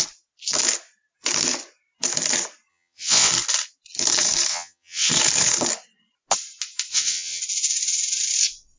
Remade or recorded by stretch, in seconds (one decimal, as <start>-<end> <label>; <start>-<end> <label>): 0.0-2.7 recorded; 2.7-3.3 remade; 3.3-4.5 recorded; 4.5-5.1 remade; 5.1-6.9 recorded; 6.9-7.4 remade; 7.4-8.8 recorded